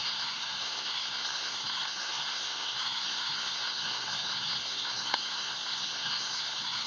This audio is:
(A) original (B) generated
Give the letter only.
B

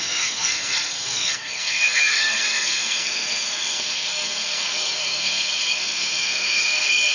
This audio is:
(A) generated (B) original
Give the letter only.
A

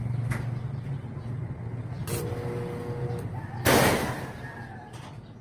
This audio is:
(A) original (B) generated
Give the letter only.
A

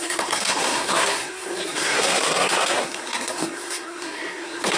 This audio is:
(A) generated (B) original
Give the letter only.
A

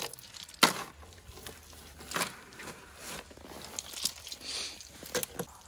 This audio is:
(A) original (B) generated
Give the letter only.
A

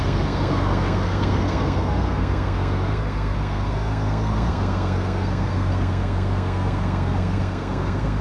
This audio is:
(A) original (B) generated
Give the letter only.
B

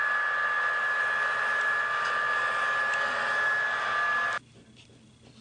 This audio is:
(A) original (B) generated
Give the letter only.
A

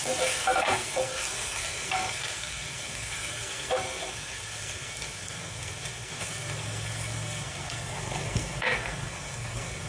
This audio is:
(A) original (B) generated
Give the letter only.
B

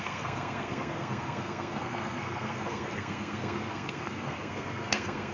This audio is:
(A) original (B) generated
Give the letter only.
B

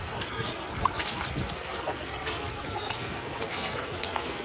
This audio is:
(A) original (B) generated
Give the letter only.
B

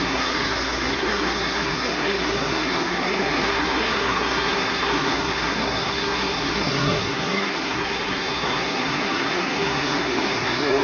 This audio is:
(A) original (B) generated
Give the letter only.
B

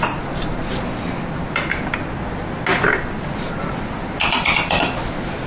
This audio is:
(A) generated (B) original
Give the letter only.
B